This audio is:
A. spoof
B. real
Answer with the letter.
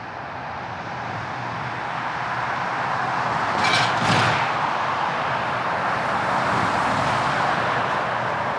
B